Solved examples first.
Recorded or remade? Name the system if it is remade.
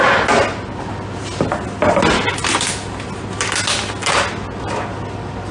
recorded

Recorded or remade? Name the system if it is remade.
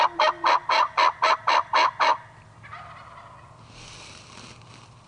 recorded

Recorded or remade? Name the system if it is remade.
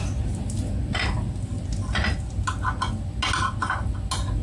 recorded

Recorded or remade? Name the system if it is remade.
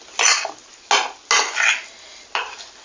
recorded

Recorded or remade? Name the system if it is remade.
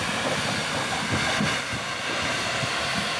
recorded